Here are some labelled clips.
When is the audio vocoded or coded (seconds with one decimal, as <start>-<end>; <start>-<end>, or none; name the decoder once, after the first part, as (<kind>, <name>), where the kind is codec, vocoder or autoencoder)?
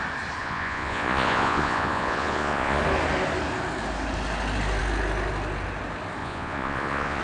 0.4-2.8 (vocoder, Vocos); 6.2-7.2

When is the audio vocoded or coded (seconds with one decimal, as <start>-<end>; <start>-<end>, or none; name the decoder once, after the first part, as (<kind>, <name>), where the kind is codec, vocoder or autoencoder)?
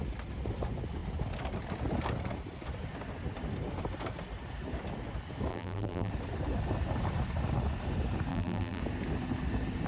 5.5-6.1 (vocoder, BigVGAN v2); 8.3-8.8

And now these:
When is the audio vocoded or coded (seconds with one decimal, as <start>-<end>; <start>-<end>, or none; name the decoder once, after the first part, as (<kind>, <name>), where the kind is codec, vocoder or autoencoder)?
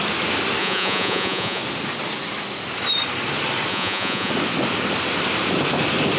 0.6-1.6 (vocoder, Vocos); 3.7-4.3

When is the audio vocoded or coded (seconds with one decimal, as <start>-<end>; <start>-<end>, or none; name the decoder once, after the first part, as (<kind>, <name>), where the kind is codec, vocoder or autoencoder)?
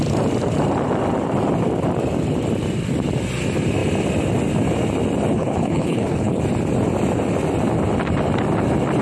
5.3-6.4 (codec, HILCodec)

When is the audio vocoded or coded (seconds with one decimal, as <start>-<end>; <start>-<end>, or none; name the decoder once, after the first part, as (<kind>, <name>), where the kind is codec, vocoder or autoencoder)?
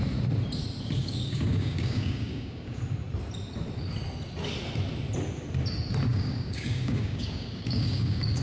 1.0-2.8 (codec, DAC); 6.1-8.4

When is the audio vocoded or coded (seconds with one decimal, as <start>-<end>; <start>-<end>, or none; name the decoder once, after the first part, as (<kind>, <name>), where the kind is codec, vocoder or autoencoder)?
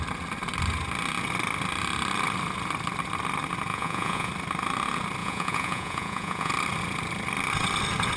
3.7-4.3 (vocoder, Vocos); 5.2-6.5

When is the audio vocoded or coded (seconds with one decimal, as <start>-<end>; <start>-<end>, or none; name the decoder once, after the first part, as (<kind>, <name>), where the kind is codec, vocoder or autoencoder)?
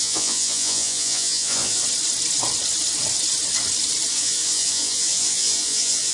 0.0-1.8 (vocoder, Vocos); 4.1-6.1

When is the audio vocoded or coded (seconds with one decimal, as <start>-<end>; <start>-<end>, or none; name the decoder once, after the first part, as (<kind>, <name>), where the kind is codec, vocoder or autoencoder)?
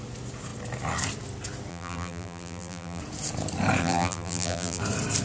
1.7-3.0 (vocoder, BigVGAN v2); 3.8-4.8